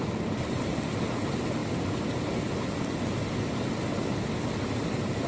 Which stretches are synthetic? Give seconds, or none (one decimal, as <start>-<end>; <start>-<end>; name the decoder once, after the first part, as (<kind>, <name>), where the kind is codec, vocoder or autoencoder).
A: none